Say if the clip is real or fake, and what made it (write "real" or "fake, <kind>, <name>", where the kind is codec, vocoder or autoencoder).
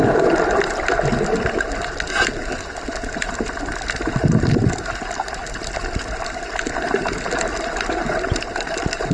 real